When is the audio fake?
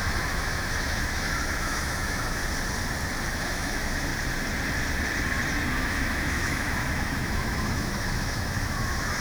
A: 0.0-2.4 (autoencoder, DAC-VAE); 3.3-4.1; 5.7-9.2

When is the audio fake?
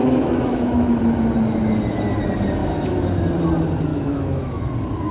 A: 0.0-1.0 (autoencoder, DAC-VAE); 2.6-3.2; 3.9-4.6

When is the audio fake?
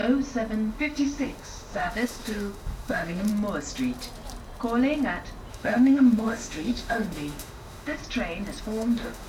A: 0.7-3.3 (autoencoder, DAC-VAE); 5.5-8.0; 8.6-9.3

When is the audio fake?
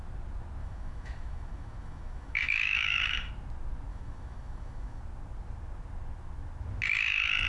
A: 0.6-3.3 (autoencoder, DAC-VAE); 3.9-5.0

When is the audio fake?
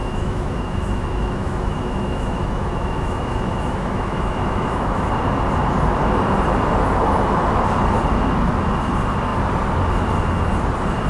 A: 0.0-5.1 (autoencoder, DAC-VAE)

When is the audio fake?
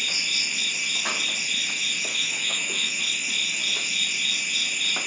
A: 2.1-3.0 (autoencoder, DAC-VAE)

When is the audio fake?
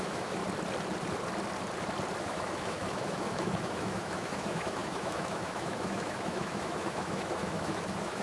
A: 0.0-0.4 (autoencoder, DAC-VAE); 2.2-8.2